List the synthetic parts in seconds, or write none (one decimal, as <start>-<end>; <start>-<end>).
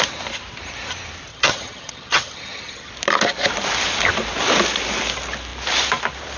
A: 1.3-2.9